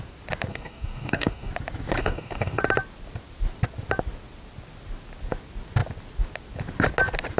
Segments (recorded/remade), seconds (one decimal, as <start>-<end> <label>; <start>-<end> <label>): 0.0-0.5 recorded; 0.5-1.5 remade; 1.5-2.0 recorded; 2.0-2.6 remade; 2.6-7.4 recorded